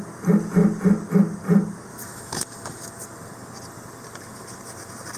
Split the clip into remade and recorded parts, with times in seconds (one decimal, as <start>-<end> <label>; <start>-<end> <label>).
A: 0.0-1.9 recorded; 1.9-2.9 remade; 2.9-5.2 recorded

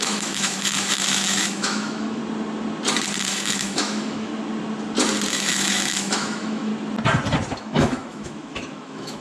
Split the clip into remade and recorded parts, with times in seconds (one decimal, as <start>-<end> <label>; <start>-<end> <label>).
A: 0.0-2.2 remade; 2.2-3.2 recorded; 3.2-4.3 remade; 4.3-5.3 recorded; 5.3-6.7 remade; 6.7-7.5 recorded; 7.5-9.2 remade

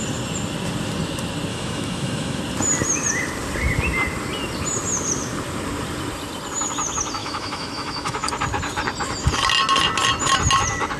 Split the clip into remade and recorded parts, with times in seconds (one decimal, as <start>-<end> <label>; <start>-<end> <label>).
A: 0.0-1.5 recorded; 1.5-2.4 remade; 2.4-7.2 recorded; 7.2-8.3 remade; 8.3-11.0 recorded

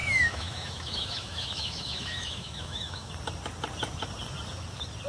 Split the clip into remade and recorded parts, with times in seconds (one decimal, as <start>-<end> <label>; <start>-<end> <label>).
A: 0.0-3.1 remade; 3.1-5.1 recorded

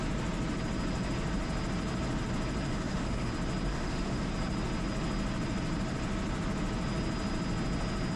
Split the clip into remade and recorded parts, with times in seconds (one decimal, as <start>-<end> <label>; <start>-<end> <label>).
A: 0.0-2.7 recorded; 2.7-3.3 remade; 3.3-3.7 recorded; 3.7-4.3 remade; 4.3-8.2 recorded

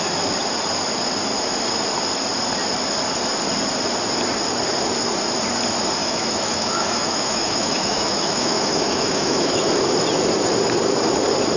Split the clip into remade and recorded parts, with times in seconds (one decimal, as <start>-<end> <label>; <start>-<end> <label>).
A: 0.0-6.0 recorded; 6.0-9.7 remade; 9.7-11.6 recorded

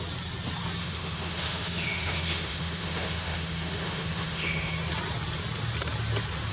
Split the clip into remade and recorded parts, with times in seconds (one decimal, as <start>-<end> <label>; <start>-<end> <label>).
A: 0.0-0.8 recorded; 0.8-4.7 remade; 4.7-6.5 recorded

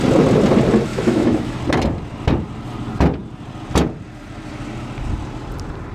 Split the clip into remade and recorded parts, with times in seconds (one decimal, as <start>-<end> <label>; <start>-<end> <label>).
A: 0.0-0.9 recorded; 0.9-1.6 remade; 1.6-5.9 recorded